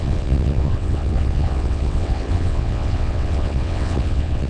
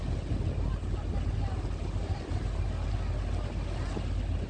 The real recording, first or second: second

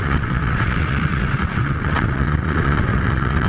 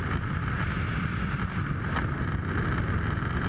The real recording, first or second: second